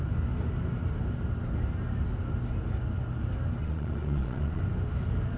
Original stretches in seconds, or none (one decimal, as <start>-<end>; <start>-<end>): 0.0-3.6; 4.6-5.4